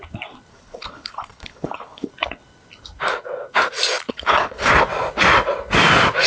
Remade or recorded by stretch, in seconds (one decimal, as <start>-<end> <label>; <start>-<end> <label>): 0.0-0.5 recorded; 0.5-2.1 remade; 2.1-4.1 recorded; 4.1-4.7 remade; 4.7-6.3 recorded